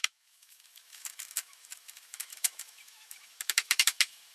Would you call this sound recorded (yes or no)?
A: no